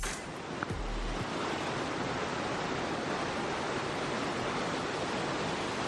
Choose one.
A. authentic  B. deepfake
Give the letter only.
A